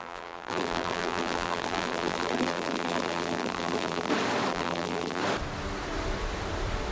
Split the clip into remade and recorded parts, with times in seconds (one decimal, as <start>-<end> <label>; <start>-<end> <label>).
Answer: 0.0-4.1 remade; 4.1-4.5 recorded; 4.5-5.2 remade; 5.2-6.9 recorded